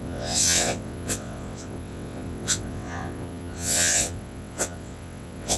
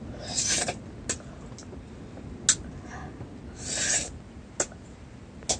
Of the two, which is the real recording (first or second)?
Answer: second